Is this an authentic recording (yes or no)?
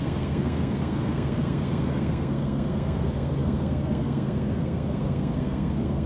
no